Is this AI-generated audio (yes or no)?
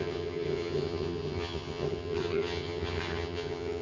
yes